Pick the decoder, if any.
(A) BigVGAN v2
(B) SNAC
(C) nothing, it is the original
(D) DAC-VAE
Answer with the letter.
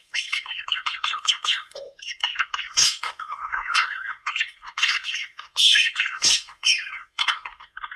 B